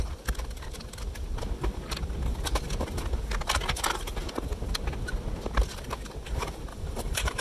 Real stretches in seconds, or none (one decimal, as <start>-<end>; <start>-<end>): 0.0-6.7